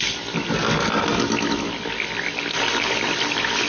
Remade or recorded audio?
recorded